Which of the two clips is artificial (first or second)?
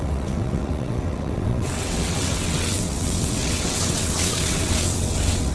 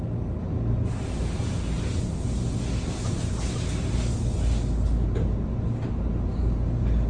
first